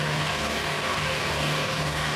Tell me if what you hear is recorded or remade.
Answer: remade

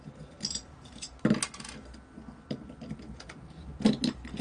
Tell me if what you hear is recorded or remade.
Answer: recorded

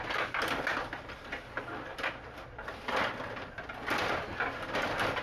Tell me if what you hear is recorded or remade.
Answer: recorded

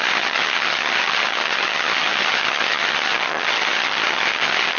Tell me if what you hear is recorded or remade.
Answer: remade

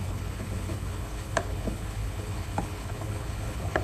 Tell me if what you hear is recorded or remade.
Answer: remade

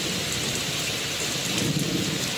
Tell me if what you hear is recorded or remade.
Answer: remade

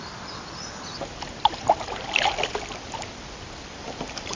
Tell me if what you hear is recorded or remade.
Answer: recorded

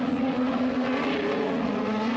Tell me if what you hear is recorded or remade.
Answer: remade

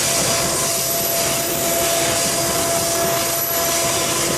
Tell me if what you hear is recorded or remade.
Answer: recorded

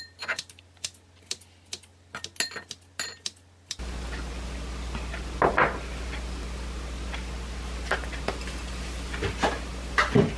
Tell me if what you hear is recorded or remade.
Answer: recorded